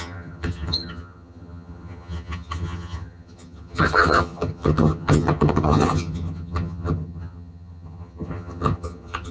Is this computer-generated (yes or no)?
yes